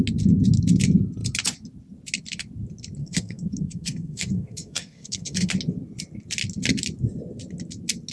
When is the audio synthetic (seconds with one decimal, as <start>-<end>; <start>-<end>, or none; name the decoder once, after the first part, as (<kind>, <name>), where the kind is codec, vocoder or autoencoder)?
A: 3.0-5.5 (codec, SNAC)